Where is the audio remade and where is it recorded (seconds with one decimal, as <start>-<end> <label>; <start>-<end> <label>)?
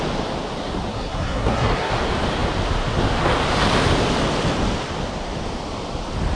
0.0-0.9 recorded; 0.9-1.9 remade; 1.9-6.4 recorded